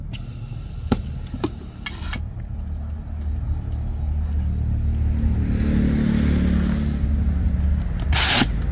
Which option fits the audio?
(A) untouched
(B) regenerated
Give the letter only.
A